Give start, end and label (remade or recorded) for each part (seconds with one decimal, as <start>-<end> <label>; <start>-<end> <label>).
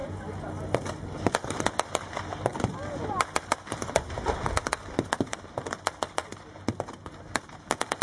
0.0-8.0 recorded